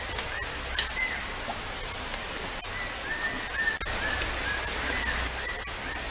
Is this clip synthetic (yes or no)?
no